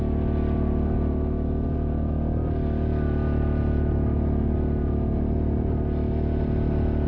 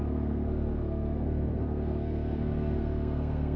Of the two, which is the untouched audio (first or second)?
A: first